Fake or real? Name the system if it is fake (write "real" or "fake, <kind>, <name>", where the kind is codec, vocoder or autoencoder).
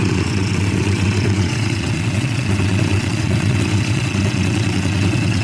fake, vocoder, WaveNeXt